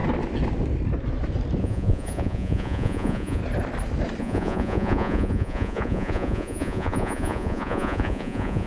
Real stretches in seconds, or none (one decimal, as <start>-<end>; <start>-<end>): 0.0-1.6; 3.4-4.2